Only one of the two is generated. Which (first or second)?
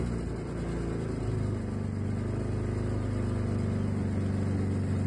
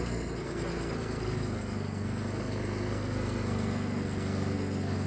second